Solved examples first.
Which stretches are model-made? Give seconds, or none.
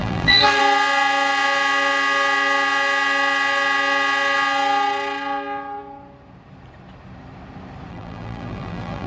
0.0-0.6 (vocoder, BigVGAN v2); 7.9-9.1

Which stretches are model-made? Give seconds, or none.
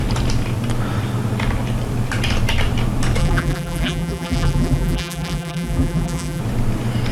3.2-6.4 (vocoder, BigVGAN v2)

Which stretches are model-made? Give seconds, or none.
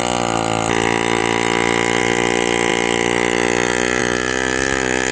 none